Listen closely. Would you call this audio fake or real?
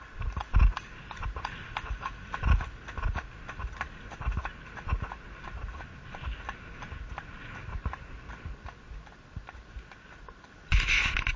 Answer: real